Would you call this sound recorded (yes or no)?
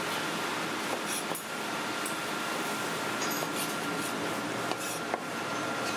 yes